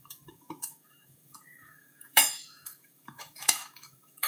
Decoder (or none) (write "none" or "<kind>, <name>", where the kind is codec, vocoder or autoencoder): autoencoder, DAC-VAE